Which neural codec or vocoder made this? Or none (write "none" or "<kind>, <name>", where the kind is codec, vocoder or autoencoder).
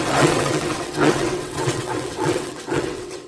vocoder, WaveNeXt